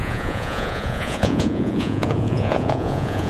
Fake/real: fake